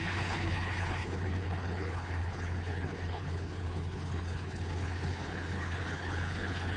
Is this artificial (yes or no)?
yes